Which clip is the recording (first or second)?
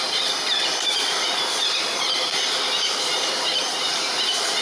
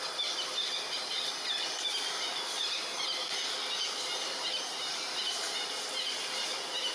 second